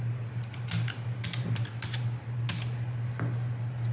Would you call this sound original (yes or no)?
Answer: yes